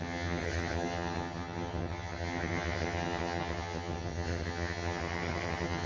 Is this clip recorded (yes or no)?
no